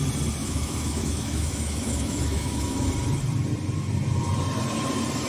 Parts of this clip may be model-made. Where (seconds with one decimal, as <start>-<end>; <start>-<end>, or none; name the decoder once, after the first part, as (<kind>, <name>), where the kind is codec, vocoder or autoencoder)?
0.4-2.9 (autoencoder, DAC-VAE)